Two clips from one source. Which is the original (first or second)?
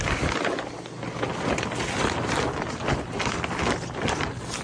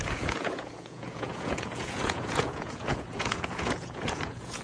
first